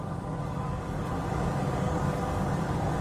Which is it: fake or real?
fake